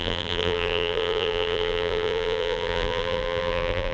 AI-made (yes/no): yes